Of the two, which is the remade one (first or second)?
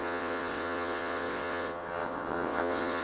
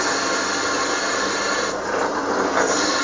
first